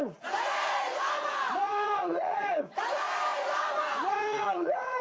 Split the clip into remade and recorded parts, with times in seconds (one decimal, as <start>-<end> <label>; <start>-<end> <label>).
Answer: 0.0-5.0 remade